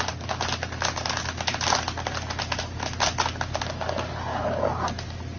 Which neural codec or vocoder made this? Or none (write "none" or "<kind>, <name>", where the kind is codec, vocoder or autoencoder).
none